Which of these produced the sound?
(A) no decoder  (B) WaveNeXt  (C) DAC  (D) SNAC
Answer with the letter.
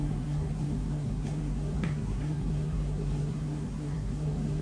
D